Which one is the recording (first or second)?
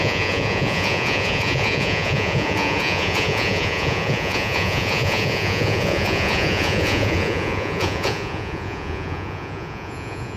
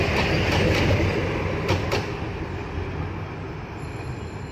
second